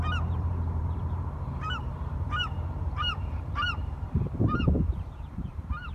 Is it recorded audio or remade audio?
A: remade